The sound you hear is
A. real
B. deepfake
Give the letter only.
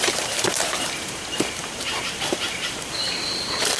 B